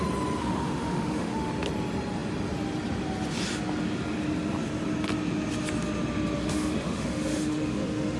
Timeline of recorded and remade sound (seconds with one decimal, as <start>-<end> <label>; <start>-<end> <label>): 0.0-0.4 recorded; 0.4-1.5 remade; 1.5-6.4 recorded; 6.4-8.2 remade